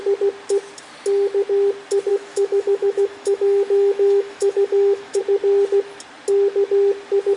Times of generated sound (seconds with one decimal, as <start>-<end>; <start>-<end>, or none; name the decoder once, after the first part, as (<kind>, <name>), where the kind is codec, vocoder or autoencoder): 2.1-5.2 (autoencoder, DAC-VAE)